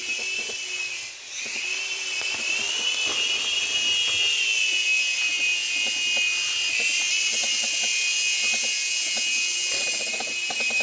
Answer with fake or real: real